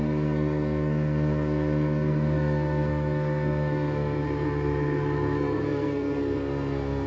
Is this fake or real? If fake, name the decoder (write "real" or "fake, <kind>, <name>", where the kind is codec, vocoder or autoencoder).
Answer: fake, codec, SNAC